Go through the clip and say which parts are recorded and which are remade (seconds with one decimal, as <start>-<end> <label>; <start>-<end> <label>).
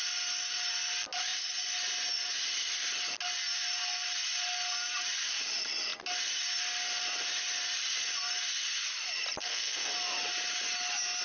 0.0-9.4 recorded; 9.4-9.9 remade; 9.9-11.2 recorded